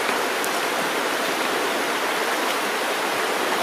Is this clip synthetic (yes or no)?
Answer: no